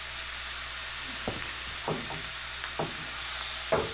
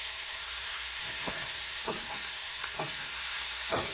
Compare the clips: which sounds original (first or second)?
first